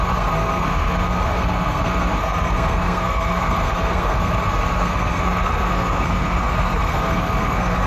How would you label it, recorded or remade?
remade